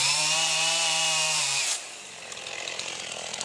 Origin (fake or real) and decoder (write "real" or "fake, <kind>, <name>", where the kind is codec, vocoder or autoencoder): fake, vocoder, BigVGAN v2